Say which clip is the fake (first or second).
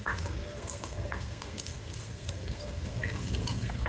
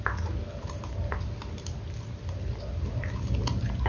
first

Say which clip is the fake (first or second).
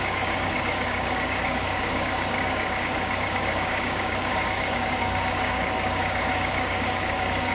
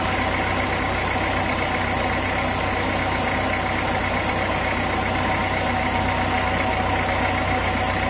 first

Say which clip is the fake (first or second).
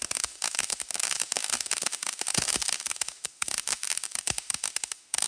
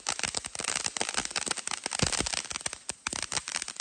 first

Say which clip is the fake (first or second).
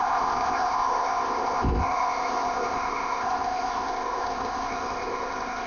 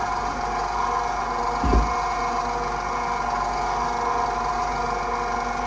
first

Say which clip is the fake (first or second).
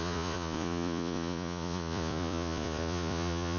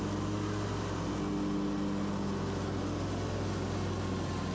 first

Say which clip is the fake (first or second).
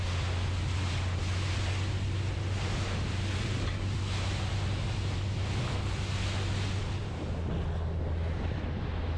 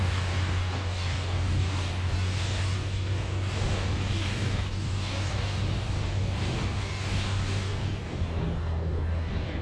second